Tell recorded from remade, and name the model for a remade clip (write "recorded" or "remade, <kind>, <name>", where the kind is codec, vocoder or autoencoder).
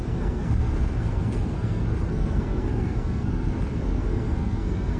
remade, codec, SNAC